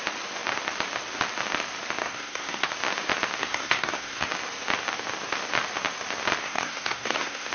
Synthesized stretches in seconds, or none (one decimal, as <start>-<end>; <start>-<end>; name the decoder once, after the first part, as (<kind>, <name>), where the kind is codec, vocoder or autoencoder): 2.0-2.7 (codec, SNAC); 3.4-4.3; 6.4-7.5